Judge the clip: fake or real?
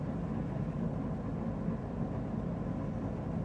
real